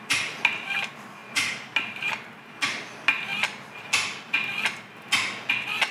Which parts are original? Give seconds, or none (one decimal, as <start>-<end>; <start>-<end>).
0.0-1.2; 2.1-5.9